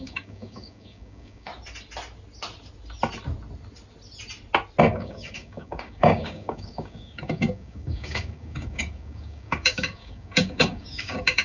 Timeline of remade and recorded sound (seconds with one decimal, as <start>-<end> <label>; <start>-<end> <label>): 0.0-1.5 remade; 1.5-4.8 recorded; 4.8-11.4 remade